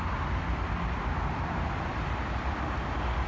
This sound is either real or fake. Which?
real